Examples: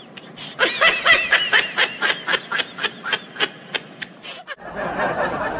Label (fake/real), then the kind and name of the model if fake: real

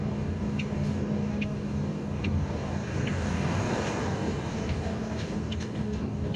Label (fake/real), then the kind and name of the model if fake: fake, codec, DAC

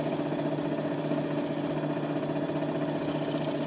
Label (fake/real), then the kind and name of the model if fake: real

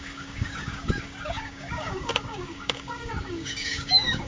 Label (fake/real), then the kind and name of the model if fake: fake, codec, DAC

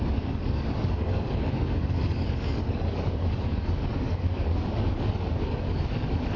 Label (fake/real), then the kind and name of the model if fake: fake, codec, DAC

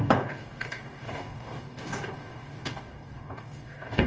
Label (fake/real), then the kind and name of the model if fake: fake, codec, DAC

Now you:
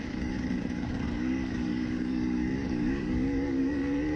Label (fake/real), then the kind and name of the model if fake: fake, codec, DAC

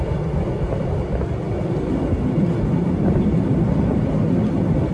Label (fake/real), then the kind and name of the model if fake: real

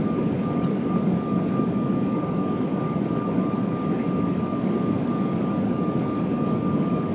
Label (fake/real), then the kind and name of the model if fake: fake, codec, DAC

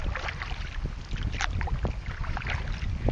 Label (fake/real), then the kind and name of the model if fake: real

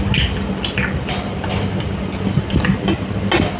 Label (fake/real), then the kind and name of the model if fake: real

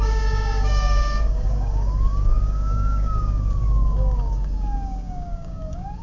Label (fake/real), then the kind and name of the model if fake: fake, codec, DAC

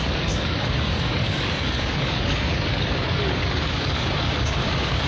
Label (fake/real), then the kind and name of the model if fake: fake, codec, DAC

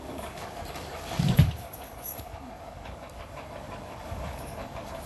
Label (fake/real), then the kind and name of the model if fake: fake, codec, DAC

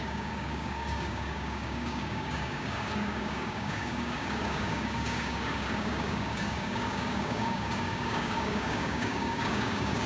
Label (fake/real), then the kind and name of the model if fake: fake, codec, DAC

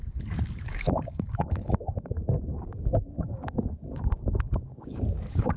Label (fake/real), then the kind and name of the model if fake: fake, codec, DAC